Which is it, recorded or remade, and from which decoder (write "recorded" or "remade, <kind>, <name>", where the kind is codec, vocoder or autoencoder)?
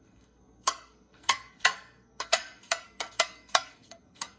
remade, codec, SNAC